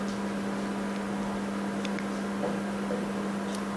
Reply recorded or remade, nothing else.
recorded